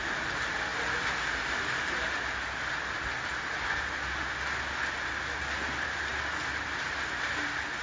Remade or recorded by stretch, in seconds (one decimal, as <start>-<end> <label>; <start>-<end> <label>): 0.0-7.8 recorded